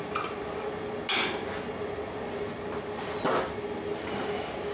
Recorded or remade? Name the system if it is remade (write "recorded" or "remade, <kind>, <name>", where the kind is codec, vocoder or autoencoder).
recorded